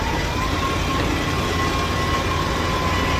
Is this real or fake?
real